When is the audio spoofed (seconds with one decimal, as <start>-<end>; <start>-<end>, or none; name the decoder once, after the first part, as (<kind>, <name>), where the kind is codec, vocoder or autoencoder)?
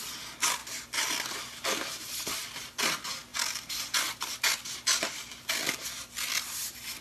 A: none